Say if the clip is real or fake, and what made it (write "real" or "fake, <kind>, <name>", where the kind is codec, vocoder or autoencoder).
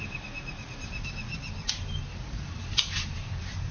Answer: real